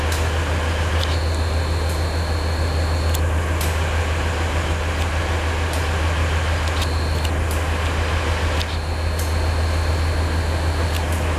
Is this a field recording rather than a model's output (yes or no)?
yes